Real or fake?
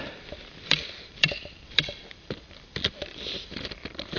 fake